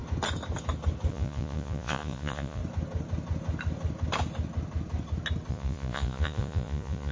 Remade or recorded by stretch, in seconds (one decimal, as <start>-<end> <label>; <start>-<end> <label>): 0.0-1.1 recorded; 1.1-2.6 remade; 2.6-5.5 recorded; 5.5-7.1 remade